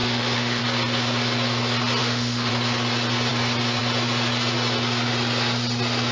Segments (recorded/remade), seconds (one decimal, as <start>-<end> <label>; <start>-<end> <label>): 0.0-0.6 remade; 0.6-2.0 recorded; 2.0-2.5 remade; 2.5-6.1 recorded